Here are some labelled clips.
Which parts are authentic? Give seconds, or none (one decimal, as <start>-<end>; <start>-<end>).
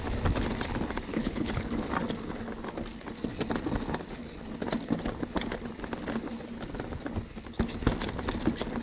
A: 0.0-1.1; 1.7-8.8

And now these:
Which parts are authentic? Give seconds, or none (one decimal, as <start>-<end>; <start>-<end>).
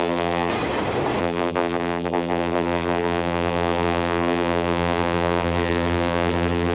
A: 0.5-1.2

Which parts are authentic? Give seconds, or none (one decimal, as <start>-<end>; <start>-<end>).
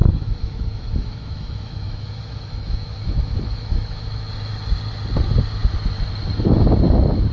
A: 4.3-7.3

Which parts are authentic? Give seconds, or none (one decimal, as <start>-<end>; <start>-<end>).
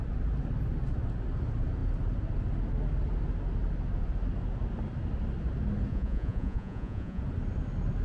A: 0.0-5.9; 7.2-8.0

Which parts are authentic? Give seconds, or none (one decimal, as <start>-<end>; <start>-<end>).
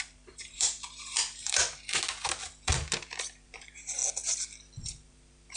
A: 1.6-3.0; 4.0-4.8